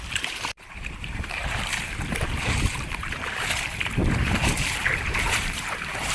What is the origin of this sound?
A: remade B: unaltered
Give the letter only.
A